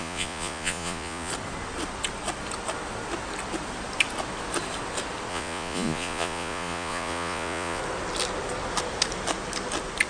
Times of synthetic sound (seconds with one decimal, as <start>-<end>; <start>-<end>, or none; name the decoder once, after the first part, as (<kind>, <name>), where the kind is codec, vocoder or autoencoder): 0.0-1.3 (vocoder, Vocos); 5.3-7.8